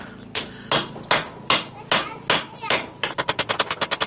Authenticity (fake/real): real